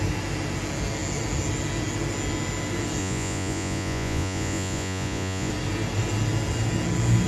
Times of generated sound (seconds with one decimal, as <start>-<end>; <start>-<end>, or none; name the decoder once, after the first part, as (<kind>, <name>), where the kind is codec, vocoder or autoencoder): 3.0-5.5 (vocoder, Vocos)